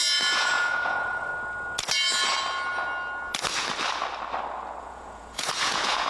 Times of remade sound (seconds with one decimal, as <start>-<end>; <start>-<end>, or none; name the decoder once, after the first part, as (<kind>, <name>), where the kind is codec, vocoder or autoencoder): 0.0-1.3 (vocoder, Vocos); 4.8-6.1